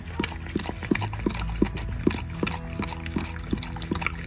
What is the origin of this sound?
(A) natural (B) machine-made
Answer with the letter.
A